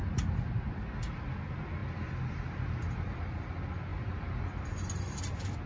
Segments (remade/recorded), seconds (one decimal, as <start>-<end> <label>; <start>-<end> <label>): 0.0-5.7 recorded